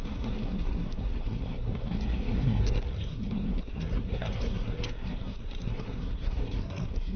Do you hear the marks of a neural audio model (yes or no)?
yes